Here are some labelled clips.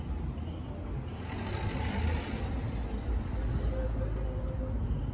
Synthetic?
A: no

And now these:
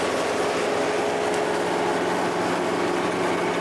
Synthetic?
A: no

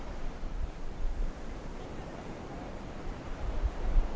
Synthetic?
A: yes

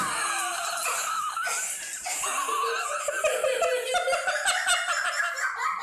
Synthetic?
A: no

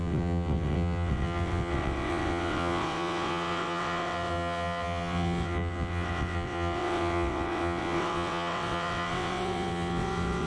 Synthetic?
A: yes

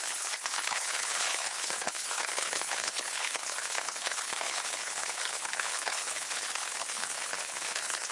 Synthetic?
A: yes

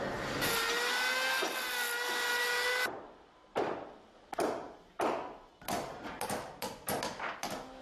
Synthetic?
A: no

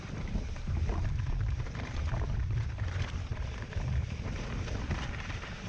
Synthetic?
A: yes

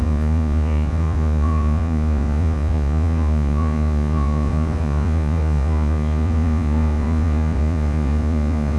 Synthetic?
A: yes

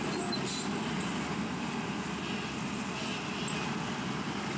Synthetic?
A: no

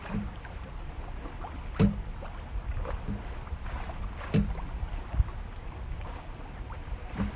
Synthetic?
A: no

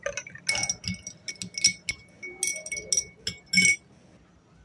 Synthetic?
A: no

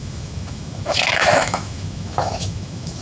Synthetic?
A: yes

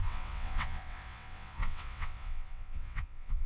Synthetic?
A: yes